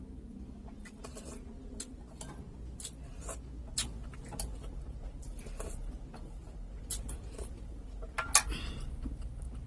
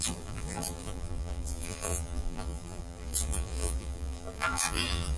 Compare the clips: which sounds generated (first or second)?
second